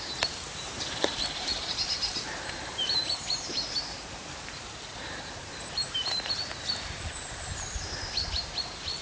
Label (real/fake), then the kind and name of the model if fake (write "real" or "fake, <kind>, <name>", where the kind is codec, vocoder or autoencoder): fake, vocoder, BigVGAN v2